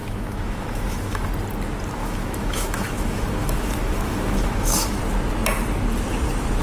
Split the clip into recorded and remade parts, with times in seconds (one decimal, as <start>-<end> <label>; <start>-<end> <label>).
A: 0.0-1.2 remade; 1.2-2.0 recorded; 2.0-5.0 remade; 5.0-6.6 recorded